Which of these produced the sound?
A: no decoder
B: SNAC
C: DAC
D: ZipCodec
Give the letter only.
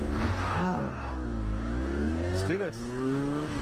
C